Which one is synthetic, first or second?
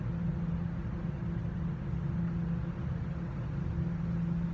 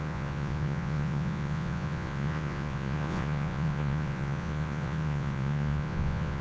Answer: second